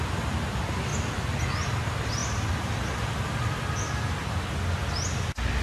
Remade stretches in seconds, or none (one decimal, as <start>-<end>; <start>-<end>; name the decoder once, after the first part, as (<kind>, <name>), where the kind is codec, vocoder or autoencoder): 2.2-3.9 (vocoder, BigVGAN v2)